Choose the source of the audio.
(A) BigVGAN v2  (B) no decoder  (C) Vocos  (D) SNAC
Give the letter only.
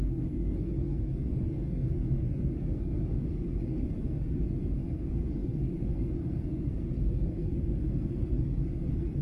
D